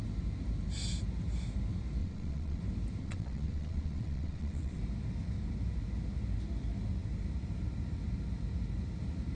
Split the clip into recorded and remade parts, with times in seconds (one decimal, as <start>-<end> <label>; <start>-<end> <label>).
0.0-2.0 recorded; 2.0-2.6 remade; 2.6-3.0 recorded; 3.0-4.8 remade; 4.8-9.3 recorded